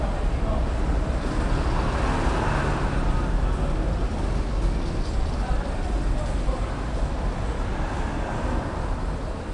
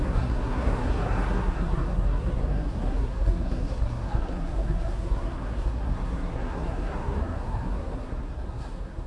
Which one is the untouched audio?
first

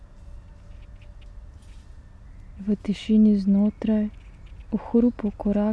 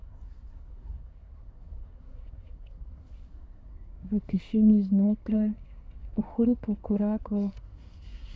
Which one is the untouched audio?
first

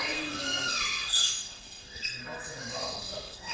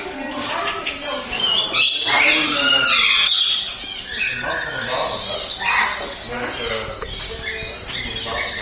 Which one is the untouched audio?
second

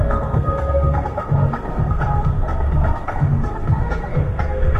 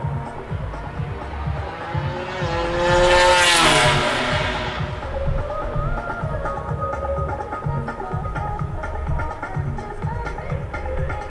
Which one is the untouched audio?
second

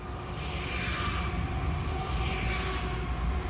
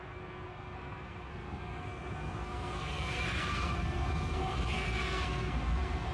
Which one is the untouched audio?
first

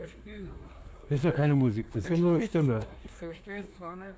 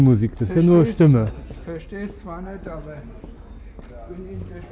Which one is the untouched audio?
second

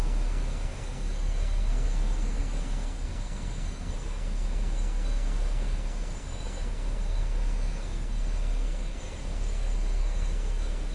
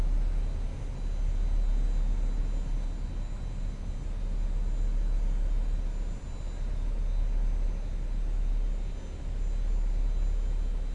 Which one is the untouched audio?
second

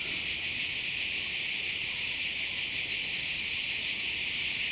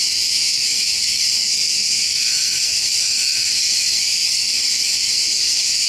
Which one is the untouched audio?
first